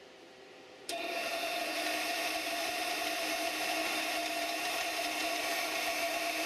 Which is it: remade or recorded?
remade